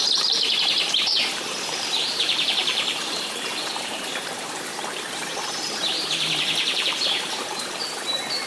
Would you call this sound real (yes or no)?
no